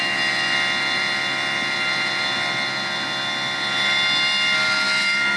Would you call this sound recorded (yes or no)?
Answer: yes